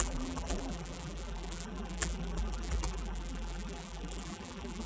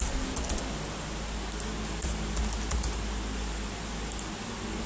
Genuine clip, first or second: second